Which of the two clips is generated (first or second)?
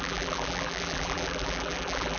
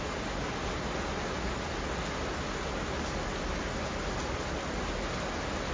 first